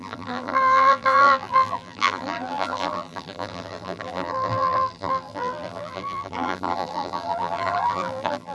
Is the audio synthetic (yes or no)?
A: yes